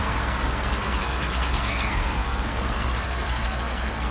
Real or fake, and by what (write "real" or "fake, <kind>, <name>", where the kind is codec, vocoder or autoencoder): fake, codec, SNAC